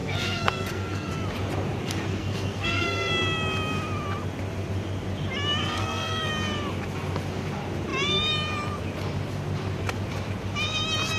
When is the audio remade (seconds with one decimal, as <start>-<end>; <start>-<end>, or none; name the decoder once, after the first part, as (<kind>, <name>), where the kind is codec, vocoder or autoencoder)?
0.0-1.1 (codec, SNAC); 1.8-3.1; 5.6-6.3